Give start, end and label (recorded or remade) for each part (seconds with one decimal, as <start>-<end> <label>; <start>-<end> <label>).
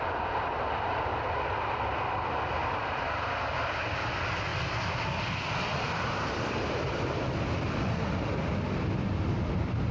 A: 0.0-5.7 recorded; 5.7-7.3 remade; 7.3-9.9 recorded